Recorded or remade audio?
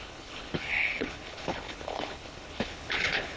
remade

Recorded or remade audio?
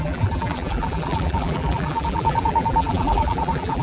remade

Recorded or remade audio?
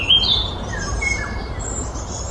remade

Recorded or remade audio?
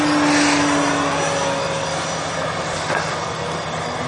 recorded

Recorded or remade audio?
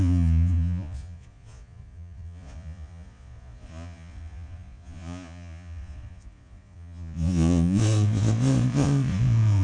remade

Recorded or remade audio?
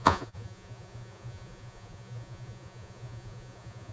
remade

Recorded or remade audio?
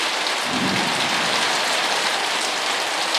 recorded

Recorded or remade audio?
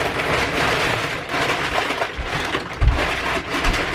remade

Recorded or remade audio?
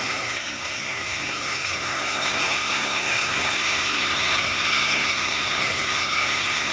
remade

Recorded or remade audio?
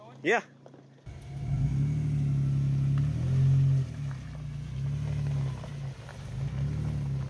recorded